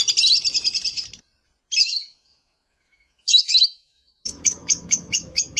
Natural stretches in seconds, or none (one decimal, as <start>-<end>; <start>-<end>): 0.0-1.8